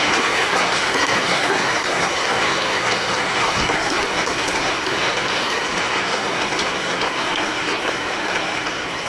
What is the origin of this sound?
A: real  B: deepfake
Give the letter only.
B